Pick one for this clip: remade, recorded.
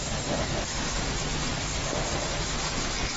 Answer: recorded